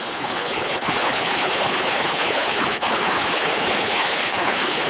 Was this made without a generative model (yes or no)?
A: no